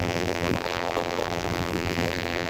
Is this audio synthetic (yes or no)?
yes